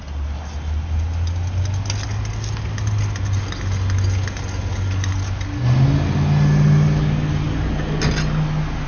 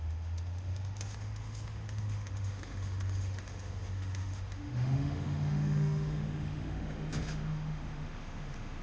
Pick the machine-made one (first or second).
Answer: second